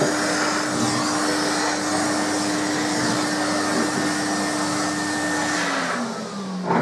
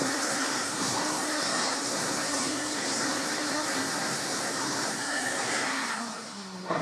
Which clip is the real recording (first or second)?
first